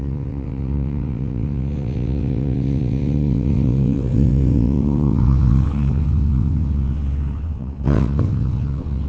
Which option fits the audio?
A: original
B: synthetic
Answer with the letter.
B